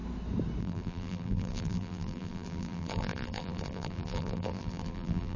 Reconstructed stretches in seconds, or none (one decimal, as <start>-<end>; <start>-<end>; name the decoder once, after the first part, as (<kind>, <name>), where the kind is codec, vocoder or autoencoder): 0.6-5.4 (vocoder, BigVGAN v2)